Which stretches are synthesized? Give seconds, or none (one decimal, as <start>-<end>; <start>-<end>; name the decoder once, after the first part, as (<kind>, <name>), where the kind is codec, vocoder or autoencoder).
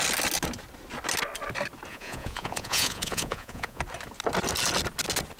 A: 1.9-3.8 (vocoder, Vocos)